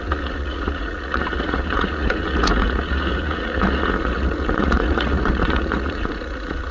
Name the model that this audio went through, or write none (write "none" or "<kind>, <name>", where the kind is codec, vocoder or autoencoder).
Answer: vocoder, Vocos